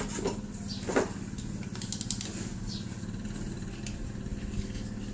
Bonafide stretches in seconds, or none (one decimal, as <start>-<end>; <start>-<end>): 0.0-5.1